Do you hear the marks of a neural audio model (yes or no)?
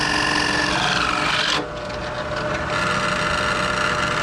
no